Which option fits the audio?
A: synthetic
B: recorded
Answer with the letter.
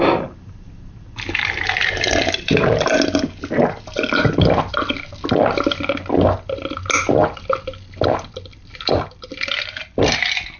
B